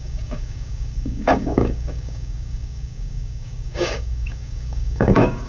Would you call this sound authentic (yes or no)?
no